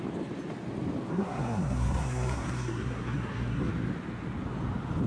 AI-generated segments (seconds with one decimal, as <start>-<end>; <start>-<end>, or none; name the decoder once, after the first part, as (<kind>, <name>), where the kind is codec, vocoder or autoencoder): 1.1-3.7 (codec, SNAC)